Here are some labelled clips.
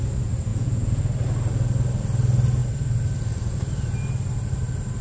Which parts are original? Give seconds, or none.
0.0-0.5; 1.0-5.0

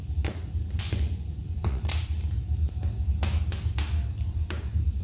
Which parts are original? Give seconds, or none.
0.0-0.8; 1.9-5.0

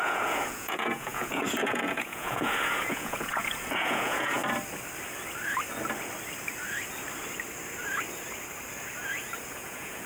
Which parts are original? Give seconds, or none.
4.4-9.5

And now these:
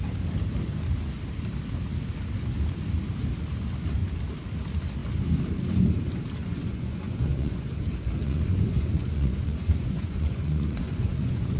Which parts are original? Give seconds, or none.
0.0-6.4; 7.7-8.2